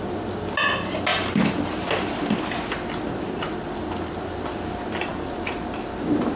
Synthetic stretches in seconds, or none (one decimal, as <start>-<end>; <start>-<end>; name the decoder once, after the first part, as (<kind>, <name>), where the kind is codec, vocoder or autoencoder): 1.1-4.9 (vocoder, BigVGAN v2)